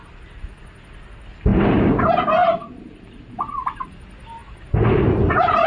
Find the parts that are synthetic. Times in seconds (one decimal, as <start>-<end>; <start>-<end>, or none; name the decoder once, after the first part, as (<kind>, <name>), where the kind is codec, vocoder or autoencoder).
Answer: 1.5-2.0 (vocoder, BigVGAN v2); 2.4-3.9